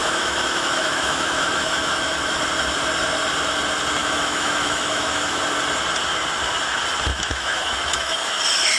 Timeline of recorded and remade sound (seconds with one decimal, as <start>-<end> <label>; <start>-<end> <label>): 0.0-2.4 remade; 2.4-4.0 recorded; 4.0-5.4 remade; 5.4-7.1 recorded; 7.1-8.4 remade; 8.4-8.8 recorded